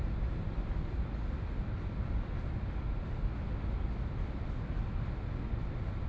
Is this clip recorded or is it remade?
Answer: recorded